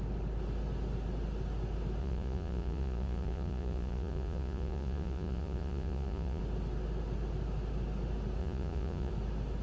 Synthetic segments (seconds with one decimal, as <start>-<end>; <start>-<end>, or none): 2.0-6.4; 8.4-9.1